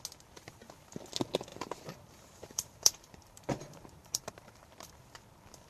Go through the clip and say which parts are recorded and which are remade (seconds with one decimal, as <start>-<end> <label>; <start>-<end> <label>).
0.0-1.5 recorded; 1.5-4.9 remade; 4.9-5.7 recorded